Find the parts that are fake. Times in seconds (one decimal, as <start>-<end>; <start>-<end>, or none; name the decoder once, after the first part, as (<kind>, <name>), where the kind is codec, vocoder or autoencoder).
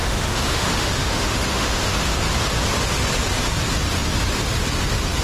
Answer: 0.0-2.3 (autoencoder, DAC-VAE)